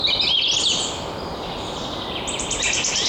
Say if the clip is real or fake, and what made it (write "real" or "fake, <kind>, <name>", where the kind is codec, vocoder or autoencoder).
real